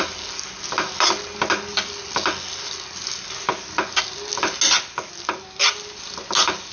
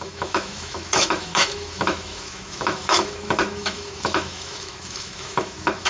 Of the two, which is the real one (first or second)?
first